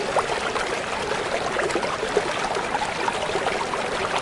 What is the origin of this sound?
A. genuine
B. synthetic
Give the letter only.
A